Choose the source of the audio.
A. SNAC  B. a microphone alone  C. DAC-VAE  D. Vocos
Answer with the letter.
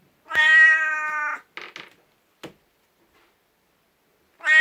B